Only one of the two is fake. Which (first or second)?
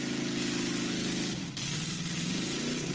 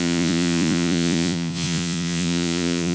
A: second